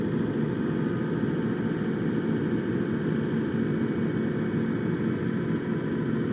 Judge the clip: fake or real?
real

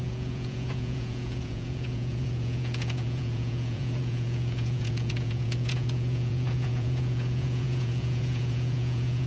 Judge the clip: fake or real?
fake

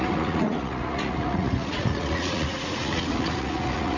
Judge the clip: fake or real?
fake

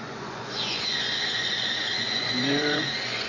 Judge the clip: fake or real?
fake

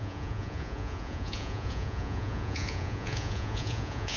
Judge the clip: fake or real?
fake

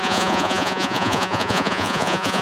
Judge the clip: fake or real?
fake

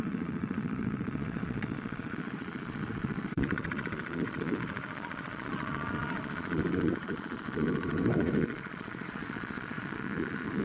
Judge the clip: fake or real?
fake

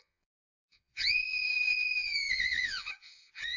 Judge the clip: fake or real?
fake